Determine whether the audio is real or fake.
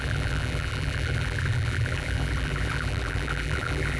fake